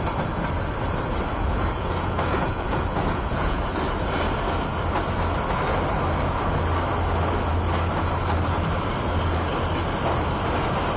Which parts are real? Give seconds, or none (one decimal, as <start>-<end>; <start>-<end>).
0.0-1.3; 3.8-11.0